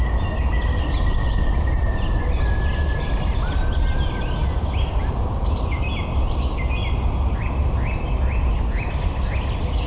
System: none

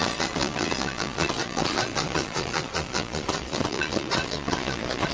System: vocoder, Vocos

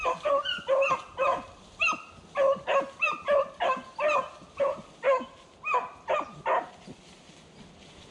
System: none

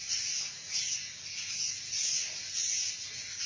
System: none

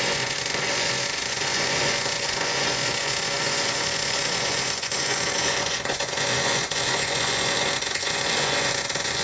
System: vocoder, Vocos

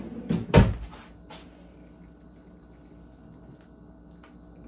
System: none